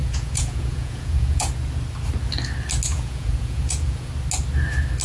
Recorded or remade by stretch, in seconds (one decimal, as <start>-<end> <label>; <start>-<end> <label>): 0.0-1.5 remade; 1.5-2.9 recorded; 2.9-4.1 remade; 4.1-5.0 recorded